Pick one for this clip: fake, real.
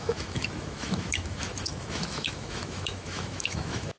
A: fake